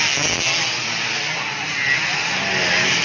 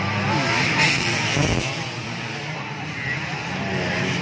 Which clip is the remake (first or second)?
second